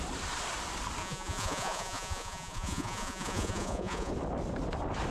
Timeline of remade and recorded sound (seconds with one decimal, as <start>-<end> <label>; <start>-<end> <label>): 0.0-1.0 recorded; 1.0-4.1 remade; 4.1-5.1 recorded